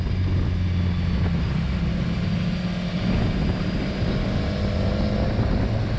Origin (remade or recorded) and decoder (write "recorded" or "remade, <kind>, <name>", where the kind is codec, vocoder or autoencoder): recorded